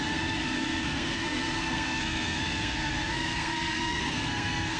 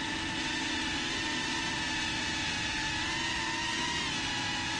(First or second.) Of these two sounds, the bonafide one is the second